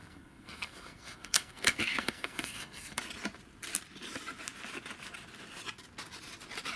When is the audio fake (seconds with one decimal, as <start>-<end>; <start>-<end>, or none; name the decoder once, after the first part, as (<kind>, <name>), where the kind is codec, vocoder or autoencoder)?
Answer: 0.0-3.0 (codec, SNAC)